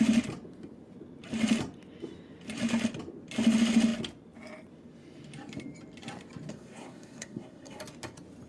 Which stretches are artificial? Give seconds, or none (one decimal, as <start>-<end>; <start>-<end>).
6.5-7.8